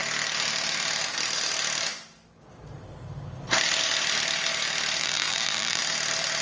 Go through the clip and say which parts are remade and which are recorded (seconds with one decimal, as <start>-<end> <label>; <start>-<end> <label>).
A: 0.0-5.0 recorded; 5.0-5.8 remade; 5.8-6.4 recorded